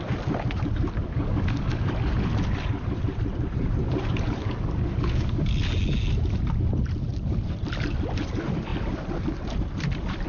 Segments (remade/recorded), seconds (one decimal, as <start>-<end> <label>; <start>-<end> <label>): 0.0-1.0 recorded; 1.0-1.9 remade; 1.9-4.4 recorded; 4.4-5.5 remade; 5.5-10.3 recorded